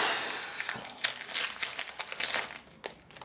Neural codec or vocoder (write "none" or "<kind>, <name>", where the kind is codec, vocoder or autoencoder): none